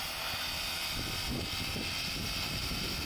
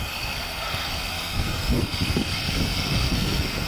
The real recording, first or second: first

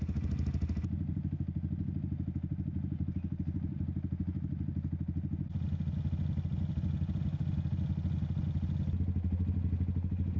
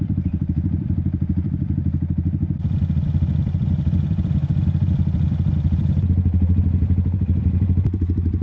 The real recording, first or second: first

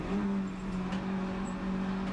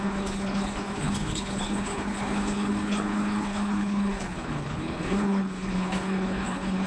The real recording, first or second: first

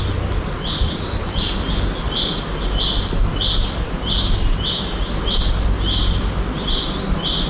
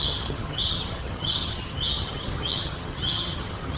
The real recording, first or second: first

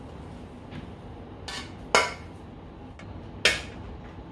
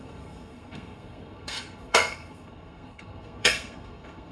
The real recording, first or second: first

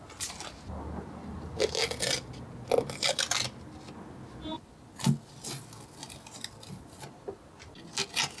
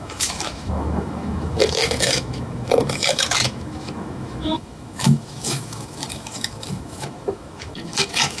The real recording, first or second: first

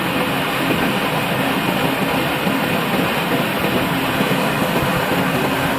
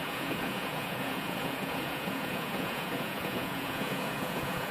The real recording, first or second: first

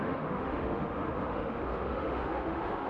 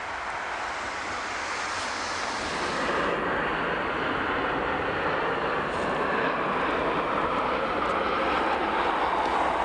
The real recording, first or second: second